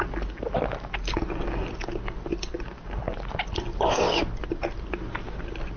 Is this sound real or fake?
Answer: real